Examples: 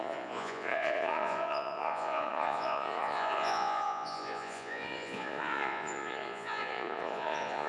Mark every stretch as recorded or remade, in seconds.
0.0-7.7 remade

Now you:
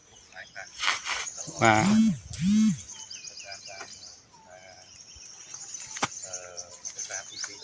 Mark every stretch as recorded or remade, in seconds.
0.0-1.6 remade; 1.6-7.6 recorded